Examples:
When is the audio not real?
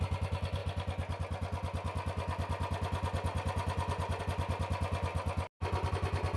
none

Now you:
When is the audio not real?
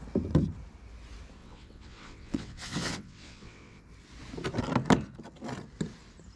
1.4-3.8 (vocoder, WaveNeXt)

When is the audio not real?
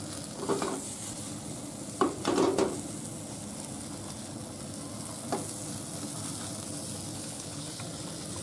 7.1-7.8 (codec, HILCodec)